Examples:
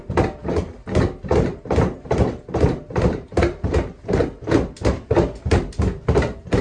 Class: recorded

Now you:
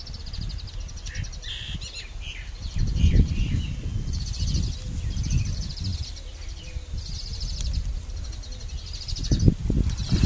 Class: recorded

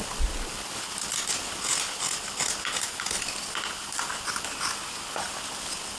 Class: recorded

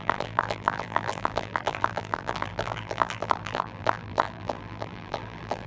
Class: remade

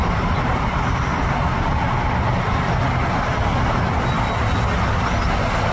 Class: recorded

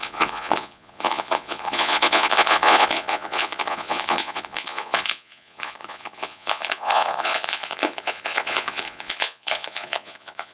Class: remade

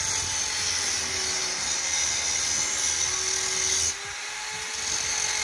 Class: recorded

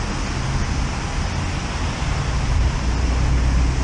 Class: recorded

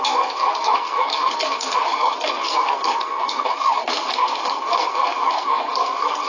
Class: remade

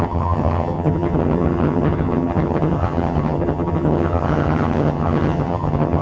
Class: remade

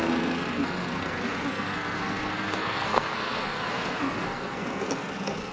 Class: remade